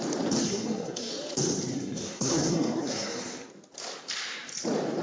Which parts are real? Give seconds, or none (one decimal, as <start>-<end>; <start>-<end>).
0.0-0.4; 1.1-1.7; 3.5-5.0